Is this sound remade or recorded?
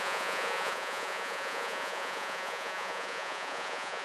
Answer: remade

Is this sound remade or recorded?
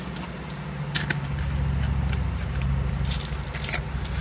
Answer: recorded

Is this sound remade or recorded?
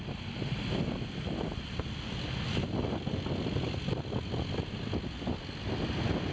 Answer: recorded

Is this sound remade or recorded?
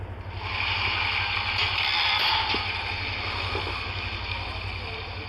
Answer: recorded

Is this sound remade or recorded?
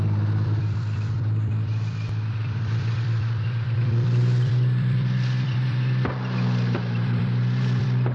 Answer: remade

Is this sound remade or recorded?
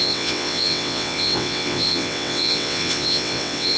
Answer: remade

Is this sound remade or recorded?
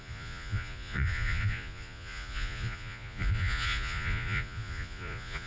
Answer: remade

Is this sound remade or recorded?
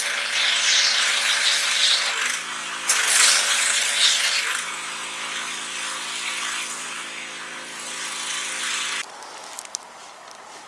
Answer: recorded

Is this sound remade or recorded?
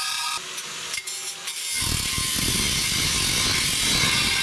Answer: recorded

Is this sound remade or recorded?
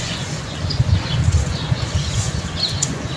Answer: remade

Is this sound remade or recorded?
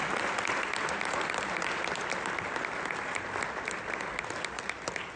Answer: recorded